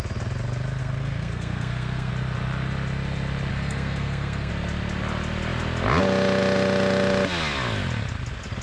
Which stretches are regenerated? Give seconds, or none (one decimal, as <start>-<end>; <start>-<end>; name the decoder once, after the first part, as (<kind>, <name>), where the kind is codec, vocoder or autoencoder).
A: 0.8-2.1 (codec, SNAC); 3.5-4.5